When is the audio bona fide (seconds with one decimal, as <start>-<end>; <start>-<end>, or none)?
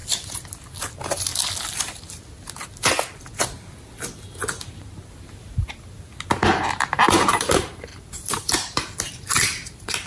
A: 0.0-0.9; 1.3-6.3